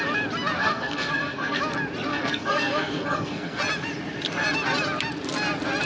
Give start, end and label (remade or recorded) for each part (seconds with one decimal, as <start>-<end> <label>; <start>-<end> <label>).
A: 0.0-0.6 recorded; 0.6-1.6 remade; 1.6-2.1 recorded; 2.1-3.6 remade; 3.6-5.9 recorded